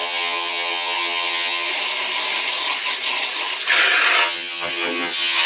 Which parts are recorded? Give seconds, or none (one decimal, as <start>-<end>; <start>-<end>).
1.7-4.2